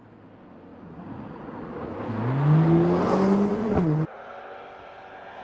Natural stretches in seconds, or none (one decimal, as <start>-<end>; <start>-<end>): 0.0-0.7; 1.9-3.5; 4.3-5.4